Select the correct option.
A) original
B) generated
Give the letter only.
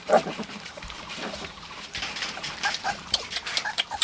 B